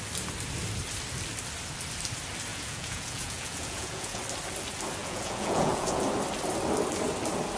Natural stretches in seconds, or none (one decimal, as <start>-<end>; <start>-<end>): 0.0-2.5; 4.2-5.0; 6.0-7.6